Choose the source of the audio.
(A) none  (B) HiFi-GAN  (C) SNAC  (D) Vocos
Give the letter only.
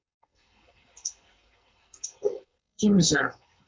C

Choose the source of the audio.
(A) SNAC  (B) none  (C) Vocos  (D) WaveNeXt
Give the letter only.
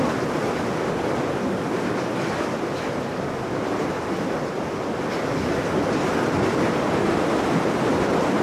B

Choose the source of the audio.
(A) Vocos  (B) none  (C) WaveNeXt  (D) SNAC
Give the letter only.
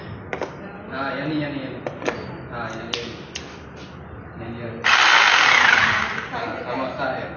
B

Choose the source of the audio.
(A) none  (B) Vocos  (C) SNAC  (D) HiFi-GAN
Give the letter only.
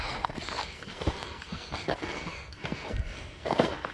C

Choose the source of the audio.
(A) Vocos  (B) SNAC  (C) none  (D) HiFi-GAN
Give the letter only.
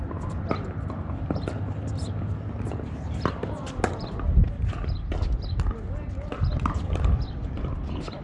C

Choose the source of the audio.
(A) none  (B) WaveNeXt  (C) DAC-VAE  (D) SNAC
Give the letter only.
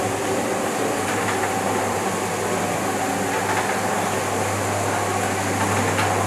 A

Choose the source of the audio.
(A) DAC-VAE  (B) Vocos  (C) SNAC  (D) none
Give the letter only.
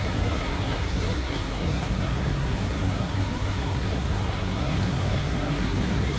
C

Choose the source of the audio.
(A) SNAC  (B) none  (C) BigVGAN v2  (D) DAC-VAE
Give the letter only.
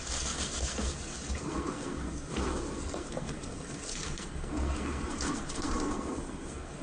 A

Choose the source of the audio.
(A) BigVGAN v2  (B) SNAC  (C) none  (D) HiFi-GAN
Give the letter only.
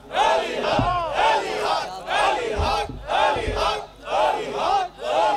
C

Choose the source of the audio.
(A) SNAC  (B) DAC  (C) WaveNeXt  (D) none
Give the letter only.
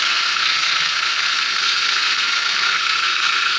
A